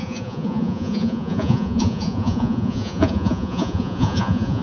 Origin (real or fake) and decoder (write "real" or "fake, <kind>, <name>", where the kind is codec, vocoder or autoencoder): fake, vocoder, Vocos